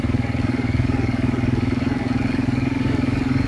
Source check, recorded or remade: remade